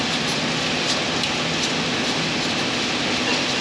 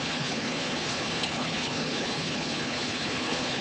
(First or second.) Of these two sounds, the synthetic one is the second